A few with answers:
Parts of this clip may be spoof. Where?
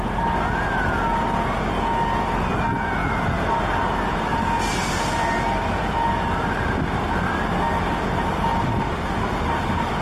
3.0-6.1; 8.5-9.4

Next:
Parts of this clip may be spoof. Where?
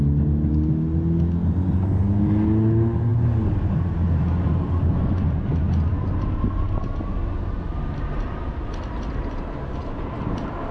none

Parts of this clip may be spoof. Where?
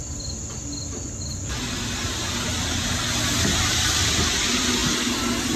none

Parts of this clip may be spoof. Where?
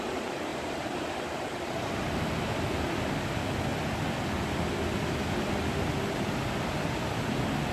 0.5-2.3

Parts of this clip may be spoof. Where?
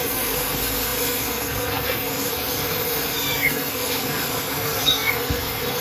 0.0-5.8